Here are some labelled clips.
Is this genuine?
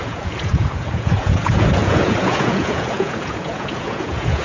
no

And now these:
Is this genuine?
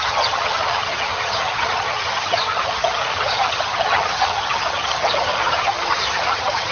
no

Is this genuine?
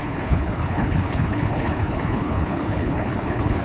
no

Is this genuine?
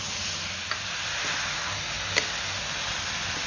yes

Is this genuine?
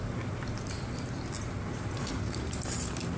yes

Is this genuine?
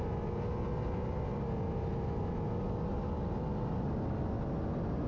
yes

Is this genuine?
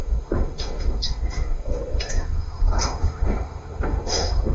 no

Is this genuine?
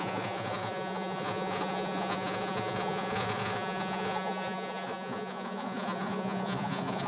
no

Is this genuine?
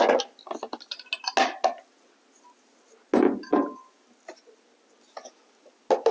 yes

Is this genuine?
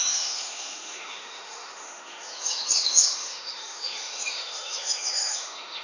no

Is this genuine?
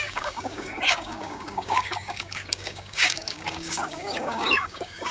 no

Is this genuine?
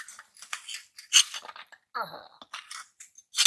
yes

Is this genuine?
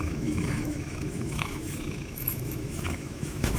no